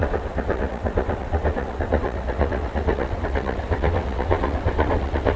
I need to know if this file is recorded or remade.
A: remade